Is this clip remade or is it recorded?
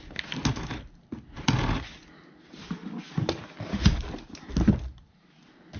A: recorded